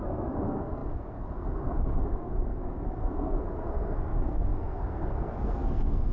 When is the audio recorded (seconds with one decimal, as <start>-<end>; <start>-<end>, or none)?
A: none